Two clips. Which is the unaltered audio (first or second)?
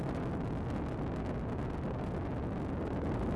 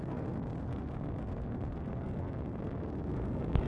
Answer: first